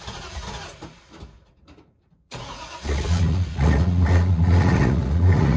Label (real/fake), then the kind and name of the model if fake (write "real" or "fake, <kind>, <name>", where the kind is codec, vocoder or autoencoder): fake, vocoder, Vocos